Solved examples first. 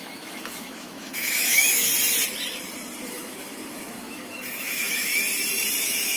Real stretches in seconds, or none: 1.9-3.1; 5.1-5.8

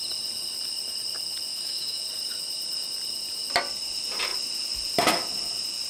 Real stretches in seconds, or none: 0.0-1.5; 2.0-5.9

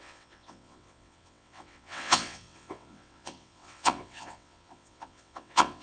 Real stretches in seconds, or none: none

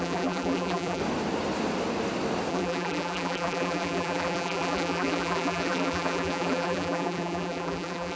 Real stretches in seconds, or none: 1.0-2.5

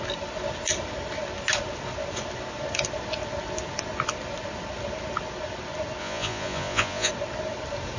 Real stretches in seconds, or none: 0.0-6.0; 7.1-8.0

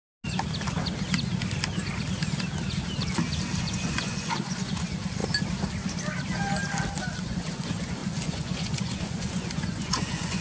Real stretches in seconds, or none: 0.0-3.6; 5.2-7.2

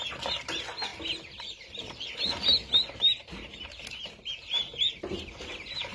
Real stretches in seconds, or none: 0.0-5.9

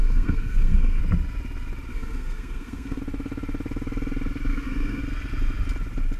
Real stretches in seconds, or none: 1.0-1.9; 3.0-4.5; 5.0-6.2